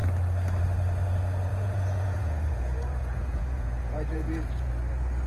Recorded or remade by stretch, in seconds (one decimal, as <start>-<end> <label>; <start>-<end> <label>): 0.0-1.5 recorded; 1.5-4.7 remade; 4.7-5.3 recorded